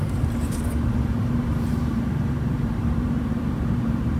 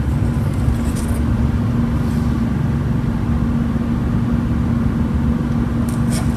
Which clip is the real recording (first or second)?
second